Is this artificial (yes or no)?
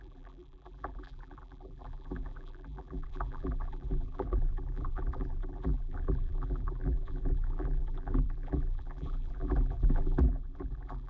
yes